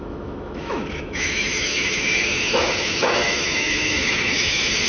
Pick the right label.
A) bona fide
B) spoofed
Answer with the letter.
B